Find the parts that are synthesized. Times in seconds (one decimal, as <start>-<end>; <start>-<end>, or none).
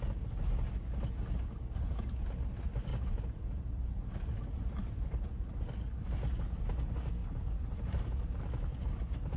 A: 2.9-6.0; 7.2-8.4